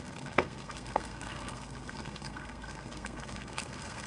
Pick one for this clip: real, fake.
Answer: fake